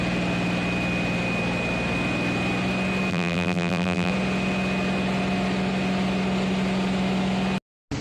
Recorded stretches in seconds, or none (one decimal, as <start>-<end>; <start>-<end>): 0.0-3.1; 4.1-8.0